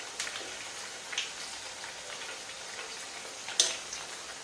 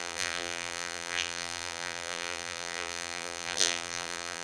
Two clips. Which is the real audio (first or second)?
first